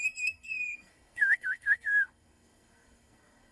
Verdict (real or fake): fake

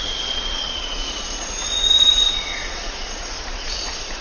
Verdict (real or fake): fake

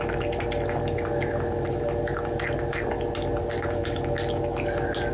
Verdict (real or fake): real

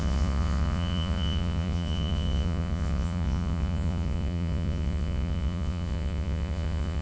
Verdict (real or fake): fake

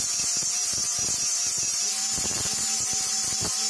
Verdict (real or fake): real